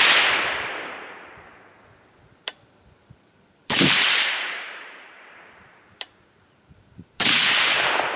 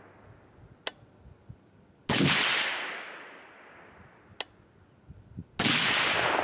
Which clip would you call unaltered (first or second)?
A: second